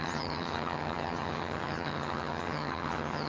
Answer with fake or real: fake